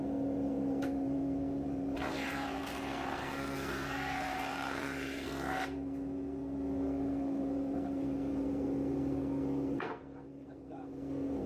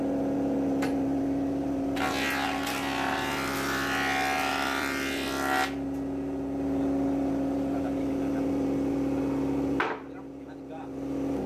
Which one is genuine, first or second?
second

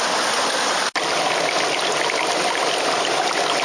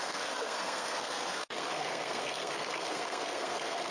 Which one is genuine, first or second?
first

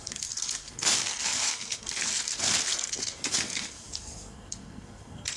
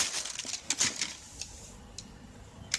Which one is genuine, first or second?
second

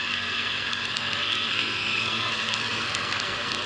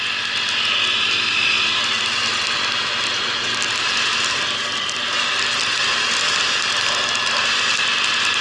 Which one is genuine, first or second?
second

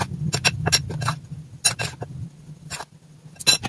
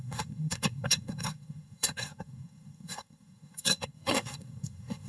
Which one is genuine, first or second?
first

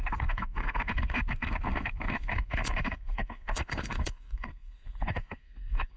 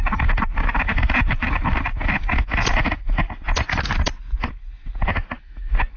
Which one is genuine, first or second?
second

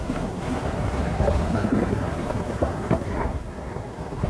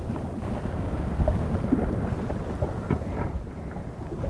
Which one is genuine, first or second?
second